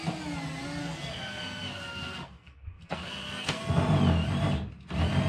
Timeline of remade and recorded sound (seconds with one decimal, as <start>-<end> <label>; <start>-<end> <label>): 0.0-0.8 recorded; 0.8-3.8 remade; 3.8-5.3 recorded